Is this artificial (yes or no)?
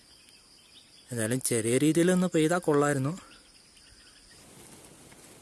no